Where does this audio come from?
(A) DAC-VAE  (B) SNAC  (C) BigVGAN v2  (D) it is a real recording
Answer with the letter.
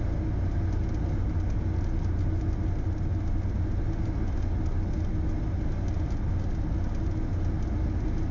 D